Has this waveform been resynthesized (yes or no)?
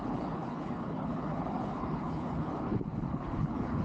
yes